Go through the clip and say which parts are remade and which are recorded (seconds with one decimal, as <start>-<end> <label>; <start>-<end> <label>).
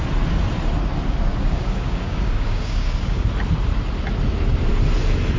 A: 0.0-1.3 recorded; 1.3-3.3 remade; 3.3-5.4 recorded